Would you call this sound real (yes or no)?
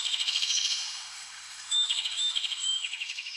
no